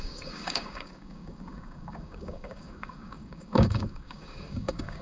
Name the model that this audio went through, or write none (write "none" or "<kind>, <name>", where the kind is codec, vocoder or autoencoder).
codec, DAC